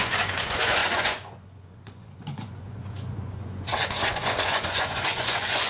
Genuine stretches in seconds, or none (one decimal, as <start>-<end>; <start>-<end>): none